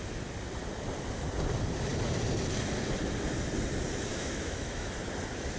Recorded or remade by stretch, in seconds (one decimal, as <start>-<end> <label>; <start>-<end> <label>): 0.0-4.1 recorded; 4.1-4.9 remade; 4.9-5.6 recorded